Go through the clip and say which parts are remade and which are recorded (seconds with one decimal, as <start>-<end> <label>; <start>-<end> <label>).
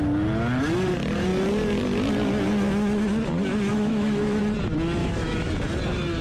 0.0-3.7 recorded; 3.7-4.4 remade; 4.4-5.0 recorded; 5.0-5.5 remade; 5.5-6.2 recorded